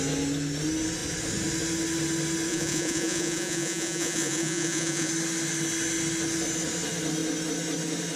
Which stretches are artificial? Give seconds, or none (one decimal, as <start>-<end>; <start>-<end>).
2.5-5.1